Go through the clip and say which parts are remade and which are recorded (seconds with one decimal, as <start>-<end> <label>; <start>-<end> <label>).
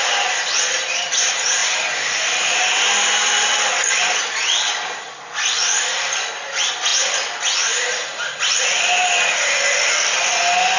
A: 0.0-10.8 recorded